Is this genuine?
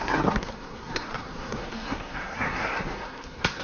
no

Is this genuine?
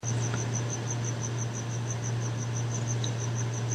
yes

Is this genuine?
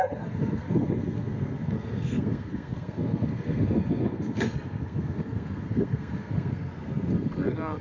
no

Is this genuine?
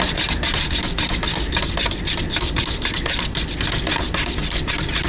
yes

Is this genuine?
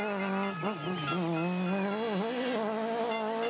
yes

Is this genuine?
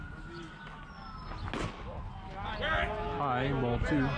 yes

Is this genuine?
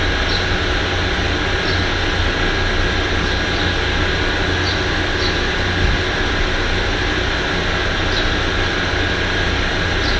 yes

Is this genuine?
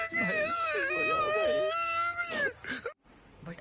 yes